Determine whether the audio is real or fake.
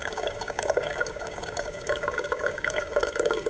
fake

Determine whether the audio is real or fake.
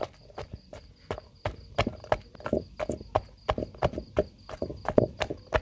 real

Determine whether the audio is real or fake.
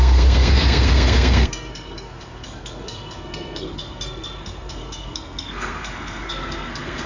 fake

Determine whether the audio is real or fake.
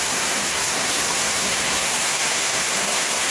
fake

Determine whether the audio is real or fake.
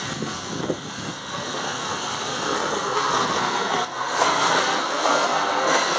fake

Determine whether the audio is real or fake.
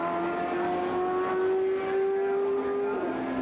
real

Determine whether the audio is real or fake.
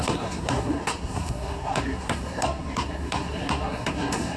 fake